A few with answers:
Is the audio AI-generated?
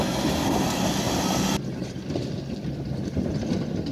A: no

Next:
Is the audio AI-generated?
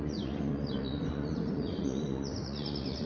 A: yes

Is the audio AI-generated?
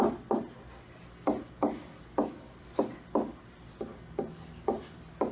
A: no